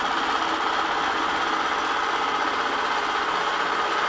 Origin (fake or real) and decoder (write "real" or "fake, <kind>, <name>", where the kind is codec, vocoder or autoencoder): real